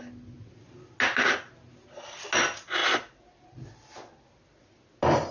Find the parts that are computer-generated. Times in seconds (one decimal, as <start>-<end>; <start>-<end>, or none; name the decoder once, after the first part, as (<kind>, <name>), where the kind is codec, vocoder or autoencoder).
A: none